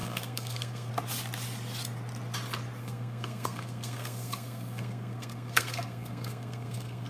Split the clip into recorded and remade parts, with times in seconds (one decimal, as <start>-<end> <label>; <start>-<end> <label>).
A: 0.0-0.9 remade; 0.9-2.8 recorded; 2.8-7.1 remade